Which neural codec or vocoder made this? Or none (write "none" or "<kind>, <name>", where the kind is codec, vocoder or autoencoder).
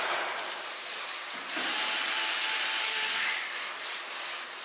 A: vocoder, BigVGAN v2